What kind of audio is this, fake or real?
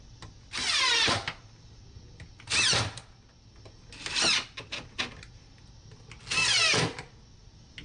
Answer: real